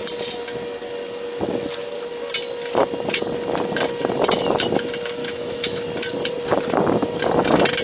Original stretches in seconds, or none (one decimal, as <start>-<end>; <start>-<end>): 0.0-5.2; 5.8-7.8